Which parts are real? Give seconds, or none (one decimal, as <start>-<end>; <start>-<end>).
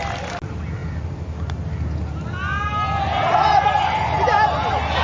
0.0-5.0